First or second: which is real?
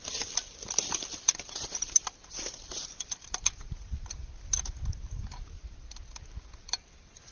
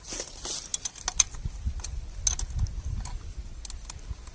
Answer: second